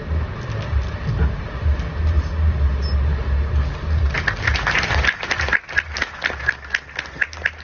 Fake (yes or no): no